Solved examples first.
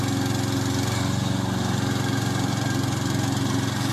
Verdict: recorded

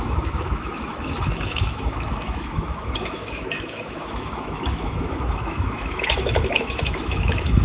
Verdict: remade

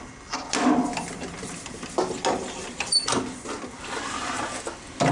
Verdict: recorded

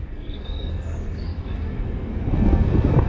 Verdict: remade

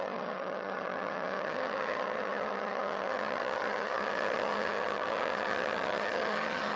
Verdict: remade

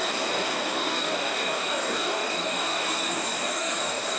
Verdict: remade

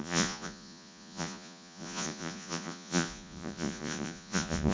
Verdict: remade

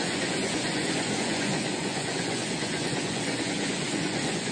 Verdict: remade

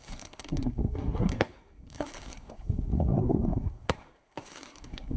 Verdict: remade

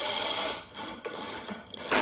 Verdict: remade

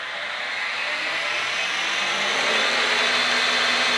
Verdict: recorded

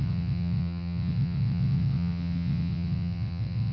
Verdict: remade